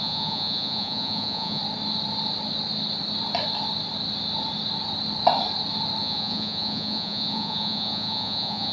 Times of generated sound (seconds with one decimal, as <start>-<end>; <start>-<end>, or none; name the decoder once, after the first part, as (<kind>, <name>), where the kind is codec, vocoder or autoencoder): 0.0-1.6 (vocoder, Vocos); 6.0-8.7